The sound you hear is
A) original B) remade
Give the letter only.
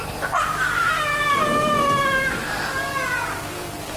A